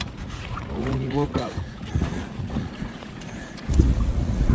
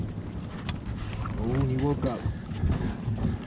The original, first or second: second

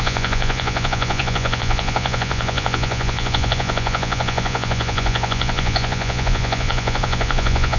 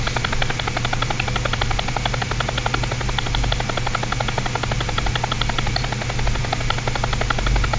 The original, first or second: second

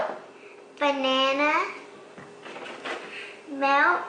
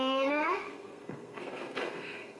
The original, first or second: first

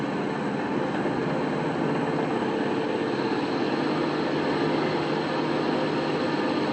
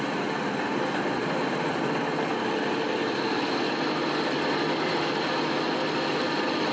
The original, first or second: first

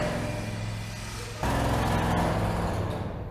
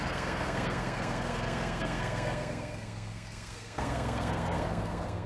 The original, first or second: first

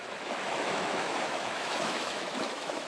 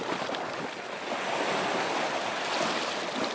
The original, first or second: second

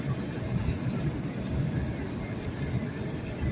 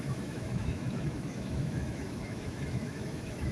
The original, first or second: first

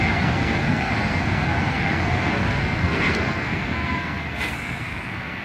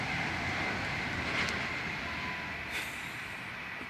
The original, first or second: second